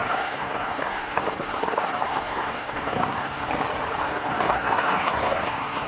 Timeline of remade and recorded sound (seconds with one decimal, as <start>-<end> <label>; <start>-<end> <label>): 0.0-3.5 remade; 3.5-4.0 recorded; 4.0-5.9 remade